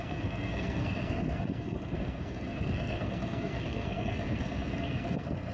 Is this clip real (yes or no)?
no